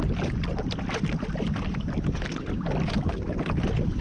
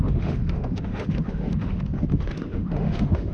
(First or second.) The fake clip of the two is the second